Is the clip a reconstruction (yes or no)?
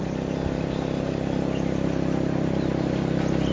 no